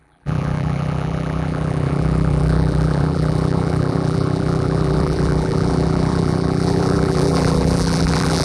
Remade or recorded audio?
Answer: remade